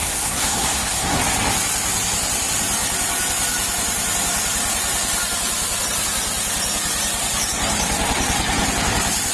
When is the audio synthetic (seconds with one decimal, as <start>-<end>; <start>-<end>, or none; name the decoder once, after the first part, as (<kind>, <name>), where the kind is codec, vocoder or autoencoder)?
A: 0.0-1.2 (codec, SNAC)